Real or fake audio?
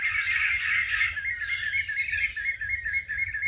real